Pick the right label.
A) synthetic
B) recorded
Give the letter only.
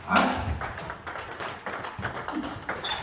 B